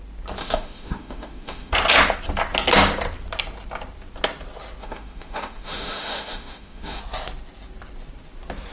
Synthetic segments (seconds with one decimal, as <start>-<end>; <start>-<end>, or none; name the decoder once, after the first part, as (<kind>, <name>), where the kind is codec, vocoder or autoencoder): 0.4-1.7 (autoencoder, DAC-VAE); 4.8-7.0